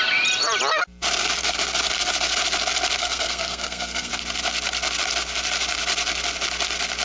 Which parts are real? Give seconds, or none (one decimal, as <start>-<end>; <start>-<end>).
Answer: 0.0-3.0; 4.1-7.0